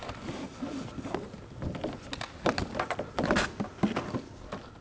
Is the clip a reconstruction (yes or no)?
no